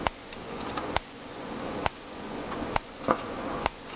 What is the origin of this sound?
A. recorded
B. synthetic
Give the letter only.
B